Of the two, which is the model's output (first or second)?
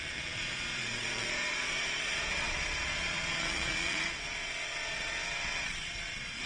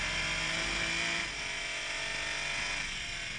first